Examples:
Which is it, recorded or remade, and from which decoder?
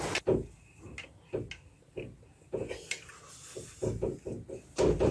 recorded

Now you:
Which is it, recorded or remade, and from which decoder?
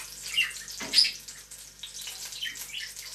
recorded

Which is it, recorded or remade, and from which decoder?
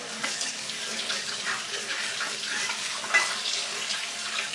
remade, codec, DAC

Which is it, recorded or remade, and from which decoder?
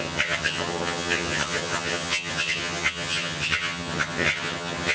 remade, vocoder, HiFi-GAN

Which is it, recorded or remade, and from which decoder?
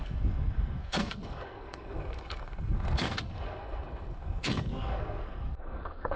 remade, codec, SNAC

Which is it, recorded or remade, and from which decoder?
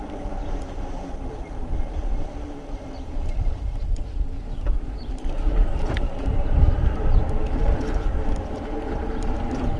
remade, vocoder, BigVGAN v2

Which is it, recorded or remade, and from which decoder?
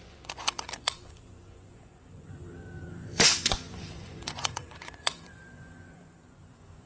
remade, vocoder, Vocos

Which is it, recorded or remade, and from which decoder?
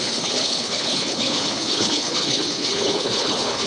remade, codec, HILCodec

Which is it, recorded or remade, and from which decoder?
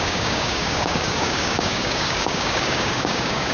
remade, codec, DAC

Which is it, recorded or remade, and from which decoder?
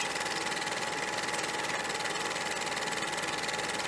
recorded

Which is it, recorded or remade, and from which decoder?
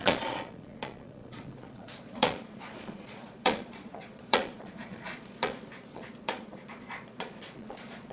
remade, vocoder, Vocos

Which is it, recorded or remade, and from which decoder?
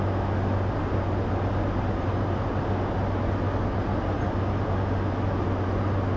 recorded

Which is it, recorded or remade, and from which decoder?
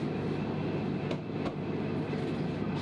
recorded